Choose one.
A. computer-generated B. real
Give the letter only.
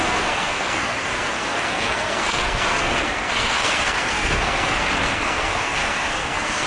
A